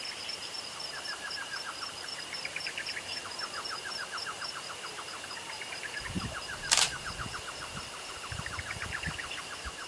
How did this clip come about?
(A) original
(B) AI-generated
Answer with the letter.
B